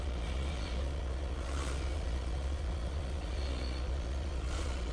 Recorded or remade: remade